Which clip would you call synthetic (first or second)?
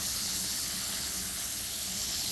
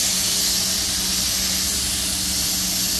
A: first